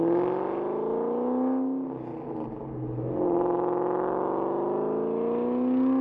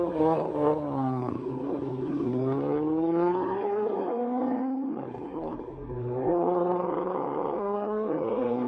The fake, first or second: second